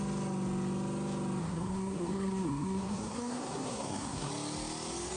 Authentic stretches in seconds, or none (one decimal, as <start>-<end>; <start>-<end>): 0.0-1.4; 4.3-5.2